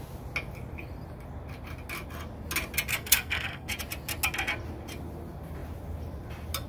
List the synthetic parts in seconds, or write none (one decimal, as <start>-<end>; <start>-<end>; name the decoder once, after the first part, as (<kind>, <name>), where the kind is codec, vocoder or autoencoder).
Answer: 2.9-3.7 (codec, SNAC)